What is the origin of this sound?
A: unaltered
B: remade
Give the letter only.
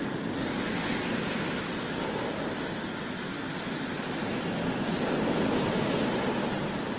A